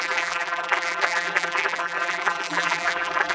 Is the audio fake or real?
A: fake